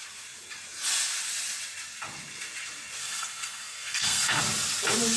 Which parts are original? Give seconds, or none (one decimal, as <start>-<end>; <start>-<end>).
0.0-3.0; 4.4-5.2